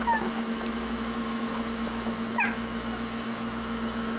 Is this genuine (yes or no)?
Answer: no